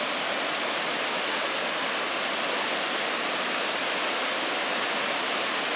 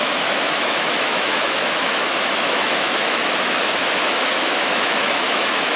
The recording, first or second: first